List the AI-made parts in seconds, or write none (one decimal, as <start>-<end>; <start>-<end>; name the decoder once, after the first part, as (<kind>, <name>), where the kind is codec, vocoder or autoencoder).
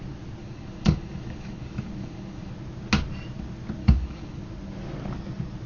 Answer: 0.4-2.5 (codec, DAC); 3.8-4.4